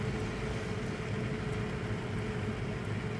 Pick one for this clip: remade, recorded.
recorded